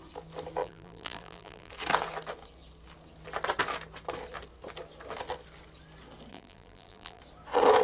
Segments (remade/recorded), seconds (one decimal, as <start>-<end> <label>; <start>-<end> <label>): 0.0-0.6 recorded; 0.6-1.7 remade; 1.7-6.3 recorded; 6.3-7.2 remade; 7.2-7.8 recorded